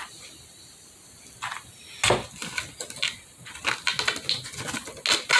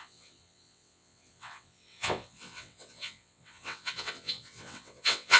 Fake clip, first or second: second